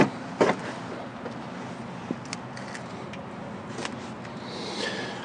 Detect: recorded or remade recorded